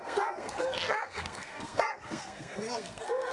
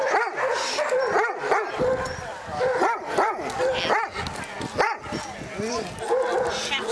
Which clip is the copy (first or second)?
first